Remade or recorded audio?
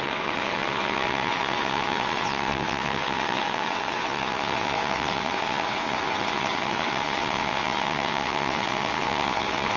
remade